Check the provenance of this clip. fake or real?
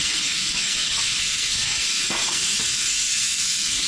fake